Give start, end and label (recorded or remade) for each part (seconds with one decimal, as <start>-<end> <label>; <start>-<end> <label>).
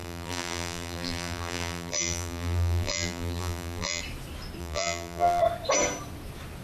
0.0-4.0 remade; 4.0-4.6 recorded; 4.6-5.4 remade; 5.4-6.6 recorded